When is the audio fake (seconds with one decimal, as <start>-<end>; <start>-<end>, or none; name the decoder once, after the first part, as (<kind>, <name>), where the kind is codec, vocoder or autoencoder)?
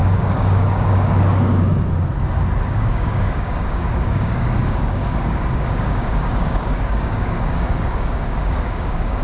0.0-1.7 (codec, DAC); 2.7-9.2